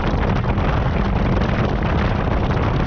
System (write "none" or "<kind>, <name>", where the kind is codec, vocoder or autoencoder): none